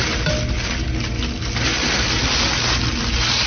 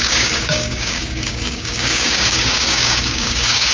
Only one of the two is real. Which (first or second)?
first